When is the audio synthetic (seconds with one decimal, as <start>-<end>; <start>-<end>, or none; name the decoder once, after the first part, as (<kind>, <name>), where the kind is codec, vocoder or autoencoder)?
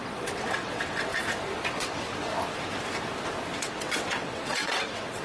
0.0-1.1 (vocoder, WaveNeXt); 1.7-2.3; 3.6-5.2